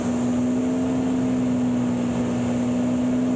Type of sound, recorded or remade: recorded